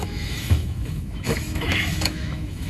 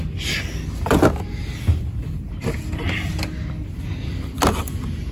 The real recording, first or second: second